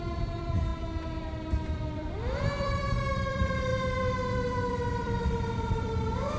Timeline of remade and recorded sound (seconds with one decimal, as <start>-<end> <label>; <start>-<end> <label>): 0.0-0.7 remade; 0.7-1.5 recorded; 1.5-3.7 remade; 3.7-4.7 recorded; 4.7-6.4 remade